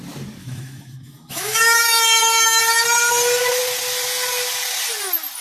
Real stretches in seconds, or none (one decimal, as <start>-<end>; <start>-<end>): 0.0-0.4; 2.6-5.4